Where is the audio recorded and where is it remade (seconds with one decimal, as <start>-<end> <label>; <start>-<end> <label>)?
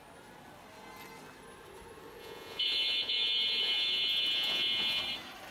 0.0-2.2 recorded; 2.2-5.0 remade; 5.0-5.5 recorded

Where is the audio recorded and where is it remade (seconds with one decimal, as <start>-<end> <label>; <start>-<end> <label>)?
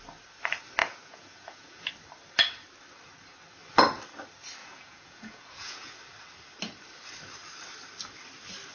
0.0-0.8 recorded; 0.8-1.9 remade; 1.9-4.6 recorded; 4.6-6.0 remade; 6.0-8.7 recorded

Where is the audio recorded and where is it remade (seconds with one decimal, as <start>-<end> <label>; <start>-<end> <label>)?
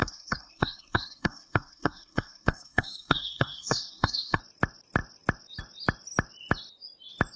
0.0-4.4 remade; 4.4-7.4 recorded